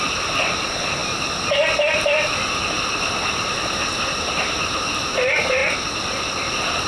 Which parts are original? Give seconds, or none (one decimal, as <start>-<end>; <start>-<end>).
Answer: 0.0-6.9